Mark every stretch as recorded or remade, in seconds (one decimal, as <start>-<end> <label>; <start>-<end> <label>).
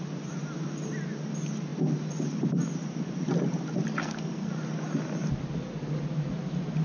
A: 0.0-4.0 recorded; 4.0-4.5 remade; 4.5-6.8 recorded